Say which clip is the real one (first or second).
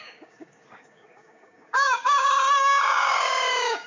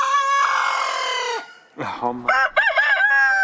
second